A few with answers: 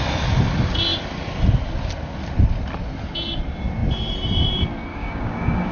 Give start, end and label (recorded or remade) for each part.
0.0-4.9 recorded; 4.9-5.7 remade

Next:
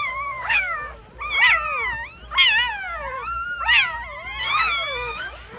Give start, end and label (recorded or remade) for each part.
0.0-1.0 remade; 1.0-4.4 recorded; 4.4-5.6 remade

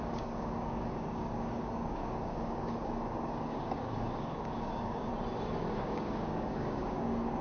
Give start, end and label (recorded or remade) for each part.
0.0-5.1 remade; 5.1-5.7 recorded; 5.7-7.4 remade